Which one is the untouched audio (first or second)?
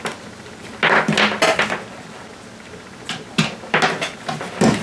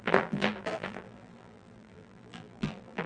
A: first